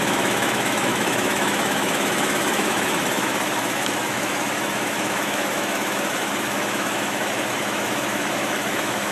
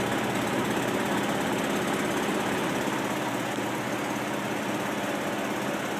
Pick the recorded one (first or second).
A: second